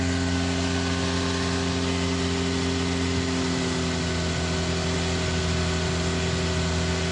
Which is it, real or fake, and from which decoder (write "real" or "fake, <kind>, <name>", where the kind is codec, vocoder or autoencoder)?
real